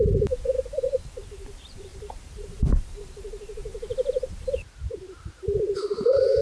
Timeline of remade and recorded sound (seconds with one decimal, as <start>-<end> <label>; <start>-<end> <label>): 0.0-3.7 remade; 3.7-4.9 recorded; 4.9-6.4 remade